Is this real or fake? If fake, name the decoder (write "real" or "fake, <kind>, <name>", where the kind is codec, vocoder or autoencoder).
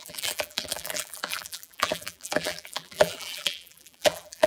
fake, vocoder, BigVGAN v2